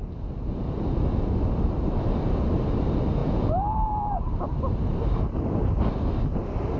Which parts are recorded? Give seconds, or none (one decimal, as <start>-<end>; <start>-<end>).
0.0-3.2; 4.1-6.8